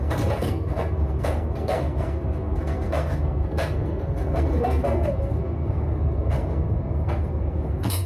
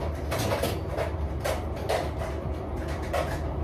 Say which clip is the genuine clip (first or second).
second